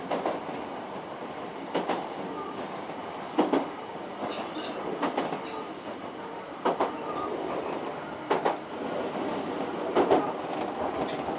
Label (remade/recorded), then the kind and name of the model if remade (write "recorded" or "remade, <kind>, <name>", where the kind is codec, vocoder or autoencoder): remade, vocoder, BigVGAN v2